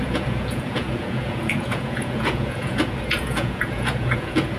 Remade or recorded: remade